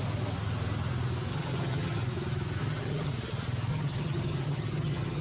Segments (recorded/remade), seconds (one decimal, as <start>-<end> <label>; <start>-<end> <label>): 0.0-1.3 recorded; 1.3-2.0 remade; 2.0-2.6 recorded; 2.6-3.1 remade; 3.1-3.7 recorded; 3.7-5.2 remade

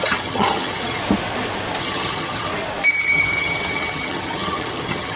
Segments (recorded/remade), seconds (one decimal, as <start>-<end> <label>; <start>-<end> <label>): 0.0-1.0 remade; 1.0-1.8 recorded; 1.8-2.5 remade; 2.5-3.0 recorded; 3.0-5.2 remade

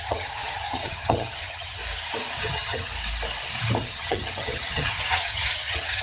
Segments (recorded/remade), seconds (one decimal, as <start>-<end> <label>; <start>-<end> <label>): 0.0-1.8 remade; 1.8-2.4 recorded; 2.4-2.9 remade; 2.9-3.8 recorded; 3.8-6.0 remade

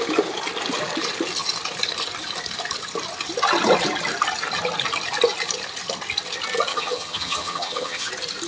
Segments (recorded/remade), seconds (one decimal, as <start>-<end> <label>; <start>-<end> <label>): 0.0-6.7 recorded; 6.7-8.1 remade; 8.1-8.5 recorded

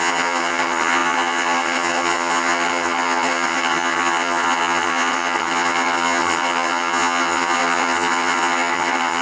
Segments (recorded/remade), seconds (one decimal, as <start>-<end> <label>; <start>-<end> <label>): 0.0-9.2 remade